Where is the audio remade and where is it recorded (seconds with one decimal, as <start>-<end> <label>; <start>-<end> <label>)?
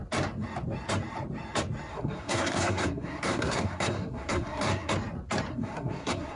0.0-1.9 recorded; 1.9-4.9 remade; 4.9-5.5 recorded; 5.5-6.4 remade